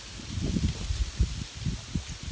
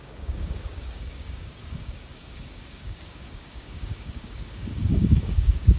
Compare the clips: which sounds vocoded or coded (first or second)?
second